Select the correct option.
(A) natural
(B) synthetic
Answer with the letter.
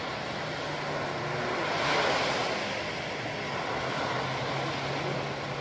A